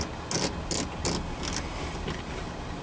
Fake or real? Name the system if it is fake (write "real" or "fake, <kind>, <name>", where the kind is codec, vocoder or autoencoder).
real